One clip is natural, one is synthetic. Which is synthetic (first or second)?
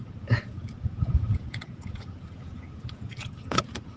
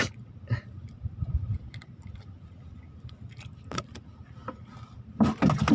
first